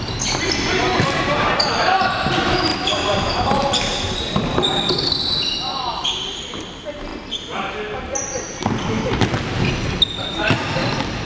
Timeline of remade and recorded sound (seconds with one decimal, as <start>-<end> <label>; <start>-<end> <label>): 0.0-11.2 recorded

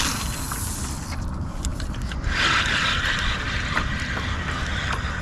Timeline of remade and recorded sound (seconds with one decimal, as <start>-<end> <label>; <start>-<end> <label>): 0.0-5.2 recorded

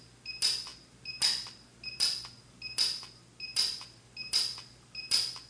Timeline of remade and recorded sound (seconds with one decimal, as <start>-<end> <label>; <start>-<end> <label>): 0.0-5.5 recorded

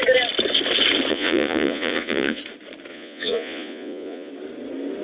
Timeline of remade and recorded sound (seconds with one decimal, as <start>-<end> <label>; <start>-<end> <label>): 0.0-1.1 recorded; 1.1-2.4 remade; 2.4-2.9 recorded; 2.9-4.3 remade; 4.3-5.0 recorded